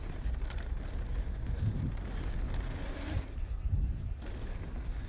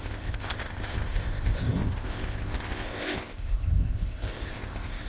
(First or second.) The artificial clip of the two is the second